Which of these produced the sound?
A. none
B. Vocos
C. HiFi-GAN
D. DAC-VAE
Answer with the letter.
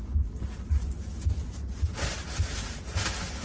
A